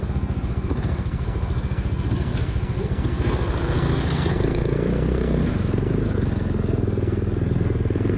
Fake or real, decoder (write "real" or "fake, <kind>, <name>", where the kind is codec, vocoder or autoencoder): fake, codec, SNAC